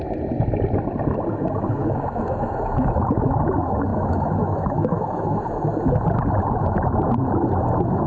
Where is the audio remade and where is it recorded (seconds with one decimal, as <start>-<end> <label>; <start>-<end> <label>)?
0.0-1.8 recorded; 1.8-3.4 remade; 3.4-3.9 recorded; 3.9-5.4 remade; 5.4-8.1 recorded